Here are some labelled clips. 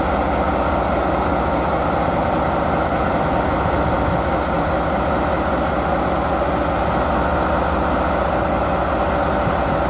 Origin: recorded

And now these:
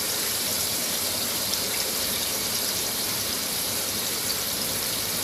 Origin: remade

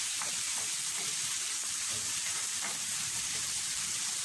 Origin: remade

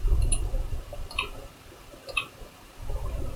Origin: remade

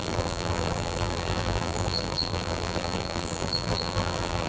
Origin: remade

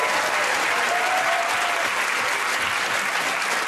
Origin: recorded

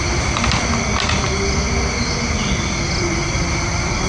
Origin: recorded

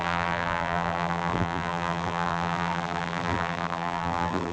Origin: remade